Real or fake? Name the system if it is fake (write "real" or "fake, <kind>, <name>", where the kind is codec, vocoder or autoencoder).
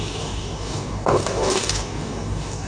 fake, codec, DAC